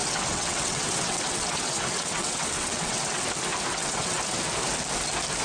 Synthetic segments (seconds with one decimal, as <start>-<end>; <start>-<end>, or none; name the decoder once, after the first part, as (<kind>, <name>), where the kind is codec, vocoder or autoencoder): 0.0-3.2 (vocoder, WaveNeXt); 3.7-4.2